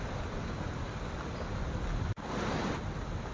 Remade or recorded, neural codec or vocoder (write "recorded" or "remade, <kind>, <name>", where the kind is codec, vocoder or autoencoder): recorded